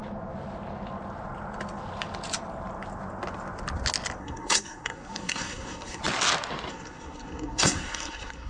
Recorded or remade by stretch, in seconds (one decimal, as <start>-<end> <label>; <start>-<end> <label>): 0.0-4.2 recorded; 4.2-6.0 remade; 6.0-6.7 recorded; 6.7-8.5 remade